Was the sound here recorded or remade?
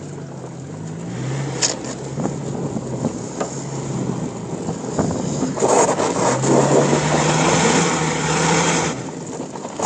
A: recorded